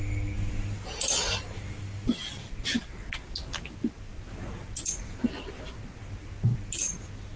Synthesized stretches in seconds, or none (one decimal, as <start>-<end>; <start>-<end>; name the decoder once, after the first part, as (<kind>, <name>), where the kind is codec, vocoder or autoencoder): 1.3-2.7 (vocoder, BigVGAN v2)